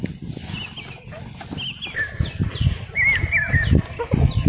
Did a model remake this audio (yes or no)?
no